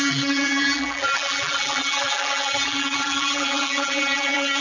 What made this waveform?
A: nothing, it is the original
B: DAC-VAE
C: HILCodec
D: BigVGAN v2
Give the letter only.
D